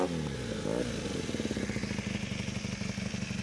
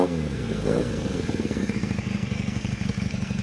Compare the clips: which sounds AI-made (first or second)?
second